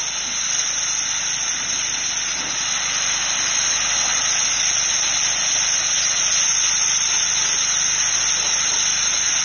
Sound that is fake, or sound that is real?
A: real